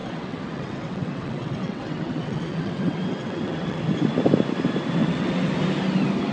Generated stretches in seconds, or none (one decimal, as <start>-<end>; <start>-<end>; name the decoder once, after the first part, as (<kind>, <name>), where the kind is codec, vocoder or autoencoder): 0.0-3.8 (vocoder, WaveNeXt); 5.0-5.5